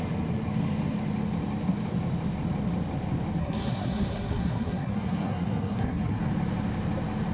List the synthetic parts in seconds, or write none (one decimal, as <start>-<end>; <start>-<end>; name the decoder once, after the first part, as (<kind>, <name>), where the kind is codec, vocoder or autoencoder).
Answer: 3.4-6.2 (codec, SNAC)